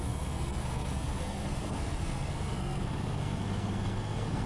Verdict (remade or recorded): remade